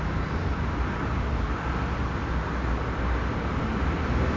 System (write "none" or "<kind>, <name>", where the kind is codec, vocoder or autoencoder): none